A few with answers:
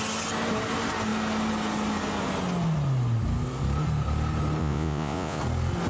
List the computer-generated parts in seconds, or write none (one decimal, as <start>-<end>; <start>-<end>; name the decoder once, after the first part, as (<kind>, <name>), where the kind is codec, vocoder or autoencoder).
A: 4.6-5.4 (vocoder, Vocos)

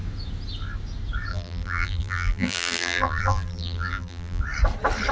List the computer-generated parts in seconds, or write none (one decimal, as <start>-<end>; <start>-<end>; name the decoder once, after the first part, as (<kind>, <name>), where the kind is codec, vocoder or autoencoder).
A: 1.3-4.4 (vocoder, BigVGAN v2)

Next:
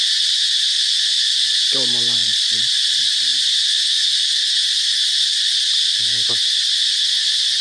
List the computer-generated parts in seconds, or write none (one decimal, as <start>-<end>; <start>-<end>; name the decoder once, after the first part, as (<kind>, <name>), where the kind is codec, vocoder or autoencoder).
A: 2.2-2.7 (vocoder, Vocos)